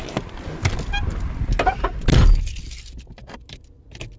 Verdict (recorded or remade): recorded